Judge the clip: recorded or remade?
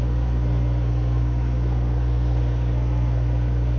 remade